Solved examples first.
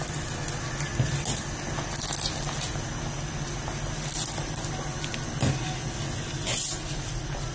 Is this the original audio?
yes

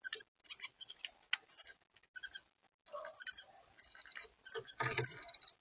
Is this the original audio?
yes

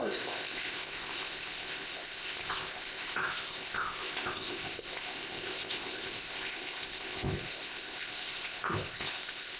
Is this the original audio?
no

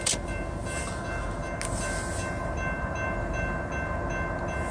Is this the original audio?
yes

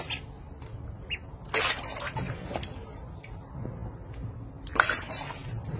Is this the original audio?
yes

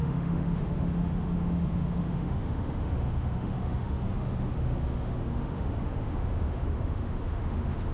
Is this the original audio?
no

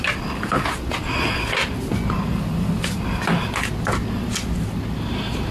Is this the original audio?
yes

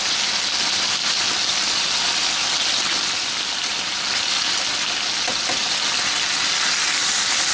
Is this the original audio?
yes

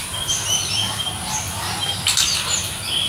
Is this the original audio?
yes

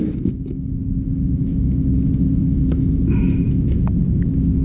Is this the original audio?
no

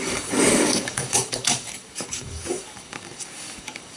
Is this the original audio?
no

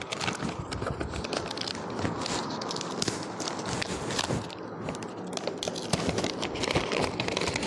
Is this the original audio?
yes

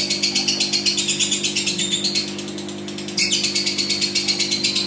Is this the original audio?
yes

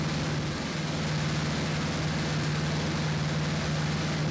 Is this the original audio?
yes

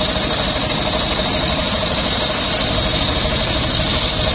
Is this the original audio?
yes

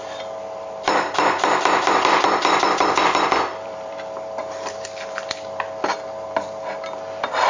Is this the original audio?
no